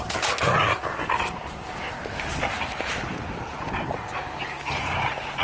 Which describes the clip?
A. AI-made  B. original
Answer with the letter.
B